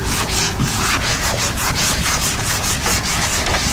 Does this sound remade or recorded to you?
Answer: remade